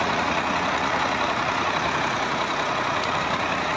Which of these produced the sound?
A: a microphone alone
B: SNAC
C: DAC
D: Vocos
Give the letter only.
D